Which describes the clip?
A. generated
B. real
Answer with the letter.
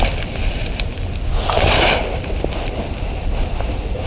B